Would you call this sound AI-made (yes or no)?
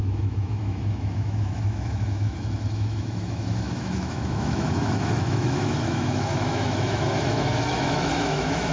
yes